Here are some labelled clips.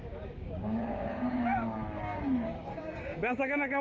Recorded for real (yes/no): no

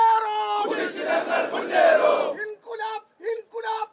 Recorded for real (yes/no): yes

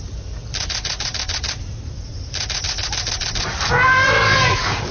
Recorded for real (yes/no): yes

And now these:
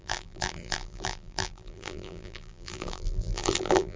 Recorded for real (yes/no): no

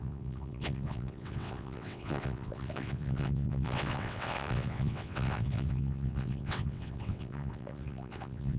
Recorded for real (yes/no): no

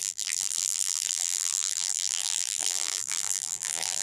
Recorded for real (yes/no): no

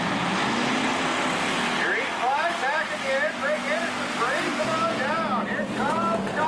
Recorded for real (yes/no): yes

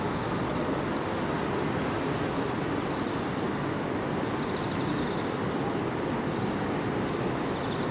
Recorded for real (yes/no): yes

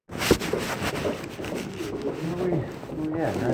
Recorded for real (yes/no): yes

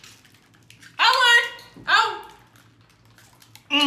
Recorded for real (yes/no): yes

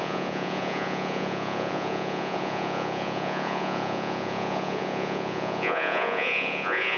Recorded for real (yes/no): no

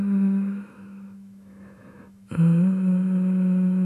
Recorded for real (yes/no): no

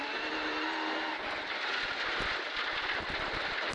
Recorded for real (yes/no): yes